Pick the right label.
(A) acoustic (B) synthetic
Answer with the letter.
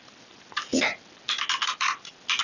A